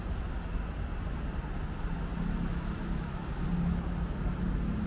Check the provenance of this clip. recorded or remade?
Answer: recorded